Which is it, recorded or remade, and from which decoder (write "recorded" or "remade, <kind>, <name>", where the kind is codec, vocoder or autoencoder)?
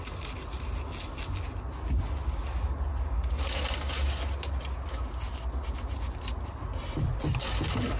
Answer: recorded